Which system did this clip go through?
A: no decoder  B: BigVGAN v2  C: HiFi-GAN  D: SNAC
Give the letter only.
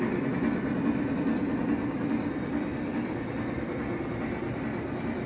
A